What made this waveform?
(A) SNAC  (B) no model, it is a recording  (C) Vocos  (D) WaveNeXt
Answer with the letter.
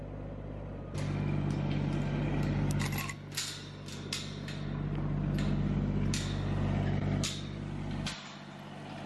B